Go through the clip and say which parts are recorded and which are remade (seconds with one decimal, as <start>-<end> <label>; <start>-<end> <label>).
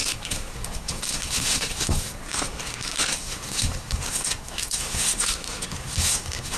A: 0.0-6.6 remade